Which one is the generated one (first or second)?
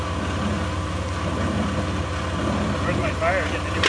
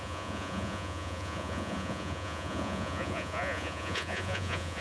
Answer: second